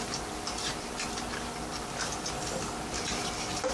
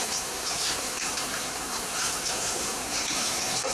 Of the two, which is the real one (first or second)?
first